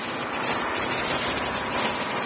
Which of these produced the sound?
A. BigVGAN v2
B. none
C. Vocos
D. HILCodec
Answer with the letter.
B